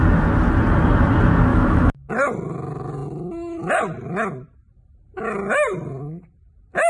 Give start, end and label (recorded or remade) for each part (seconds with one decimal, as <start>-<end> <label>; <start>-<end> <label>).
0.0-1.5 recorded; 1.5-2.1 remade; 2.1-6.9 recorded